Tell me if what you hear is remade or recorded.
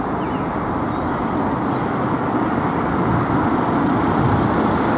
recorded